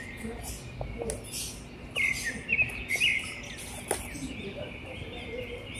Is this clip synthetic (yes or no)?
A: no